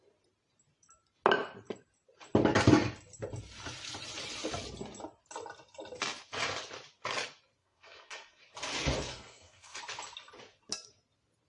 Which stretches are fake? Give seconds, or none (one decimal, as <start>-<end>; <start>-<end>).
7.6-8.4; 9.1-9.8